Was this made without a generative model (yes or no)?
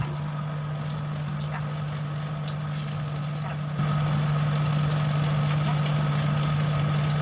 yes